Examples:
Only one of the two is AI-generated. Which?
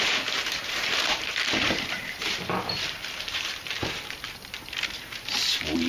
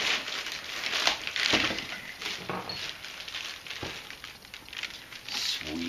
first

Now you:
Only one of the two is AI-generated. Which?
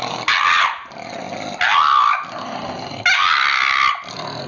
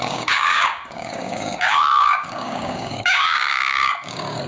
second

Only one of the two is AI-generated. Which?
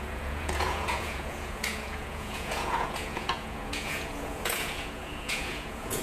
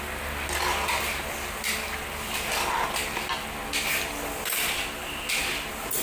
first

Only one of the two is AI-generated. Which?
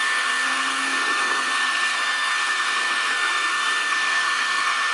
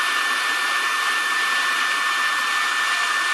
first